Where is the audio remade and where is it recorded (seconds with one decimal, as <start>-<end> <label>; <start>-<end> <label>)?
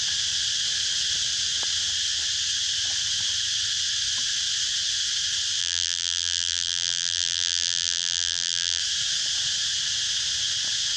0.0-5.6 recorded; 5.6-8.8 remade; 8.8-11.0 recorded